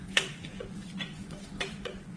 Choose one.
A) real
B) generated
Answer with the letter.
B